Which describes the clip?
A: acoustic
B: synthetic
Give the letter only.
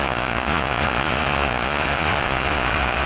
B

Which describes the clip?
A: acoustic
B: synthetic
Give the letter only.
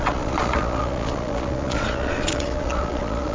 B